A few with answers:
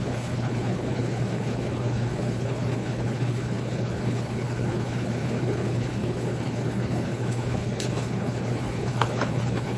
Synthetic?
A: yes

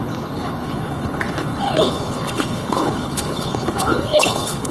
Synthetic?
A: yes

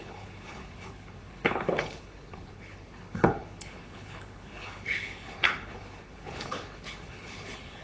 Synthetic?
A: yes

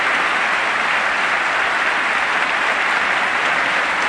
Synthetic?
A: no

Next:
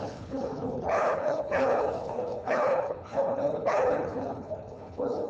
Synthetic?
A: yes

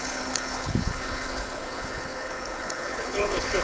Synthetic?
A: yes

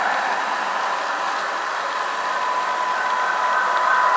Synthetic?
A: no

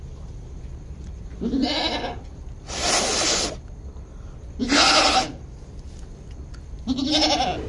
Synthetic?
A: no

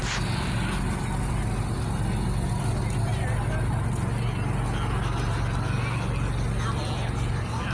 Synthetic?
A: no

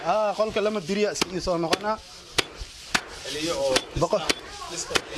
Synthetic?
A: no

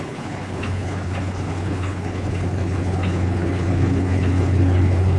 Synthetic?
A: yes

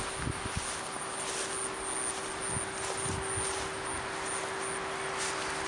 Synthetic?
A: no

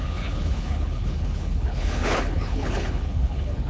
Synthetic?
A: yes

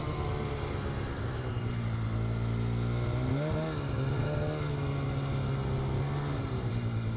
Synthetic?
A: no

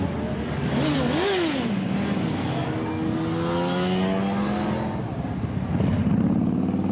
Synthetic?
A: no